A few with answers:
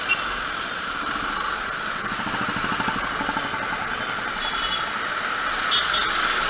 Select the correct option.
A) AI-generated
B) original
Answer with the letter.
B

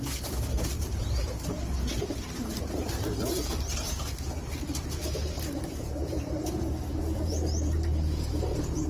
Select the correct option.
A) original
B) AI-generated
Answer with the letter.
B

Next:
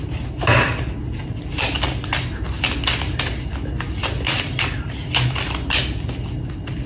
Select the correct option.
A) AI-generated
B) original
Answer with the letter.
B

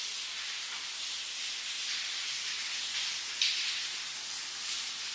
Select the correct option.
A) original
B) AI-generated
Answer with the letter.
A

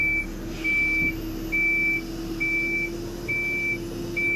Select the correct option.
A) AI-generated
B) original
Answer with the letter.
B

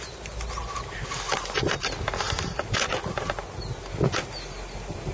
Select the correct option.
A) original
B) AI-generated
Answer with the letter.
A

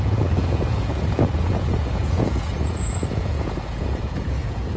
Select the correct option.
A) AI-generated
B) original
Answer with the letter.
A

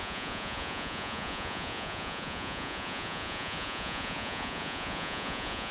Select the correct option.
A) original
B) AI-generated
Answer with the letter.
B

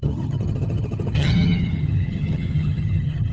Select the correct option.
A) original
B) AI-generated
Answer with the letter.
B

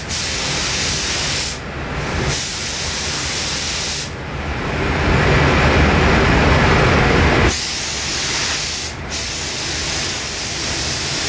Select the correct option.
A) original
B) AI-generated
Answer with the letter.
A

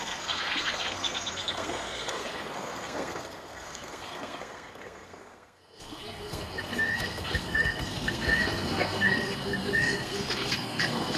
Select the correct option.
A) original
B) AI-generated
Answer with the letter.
B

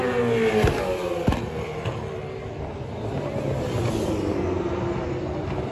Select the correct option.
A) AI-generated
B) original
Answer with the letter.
B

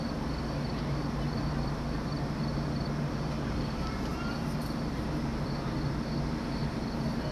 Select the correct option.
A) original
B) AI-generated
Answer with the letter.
B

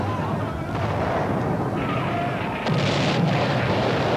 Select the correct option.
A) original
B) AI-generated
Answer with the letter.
A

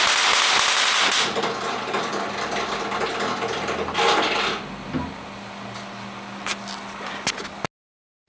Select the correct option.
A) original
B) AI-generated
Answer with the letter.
A